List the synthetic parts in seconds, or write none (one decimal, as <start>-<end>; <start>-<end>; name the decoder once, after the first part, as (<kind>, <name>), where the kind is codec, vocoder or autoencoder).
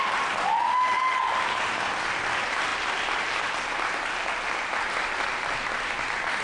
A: 0.6-1.2 (autoencoder, DAC-VAE)